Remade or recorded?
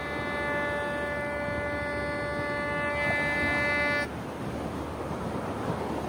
recorded